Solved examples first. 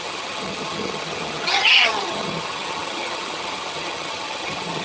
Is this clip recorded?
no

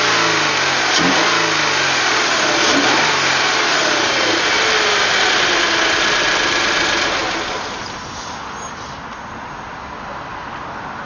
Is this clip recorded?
yes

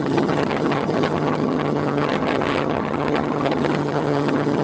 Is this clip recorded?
no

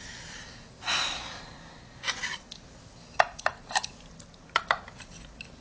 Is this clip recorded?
yes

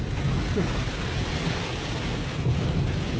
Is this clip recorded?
yes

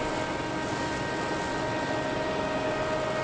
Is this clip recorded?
yes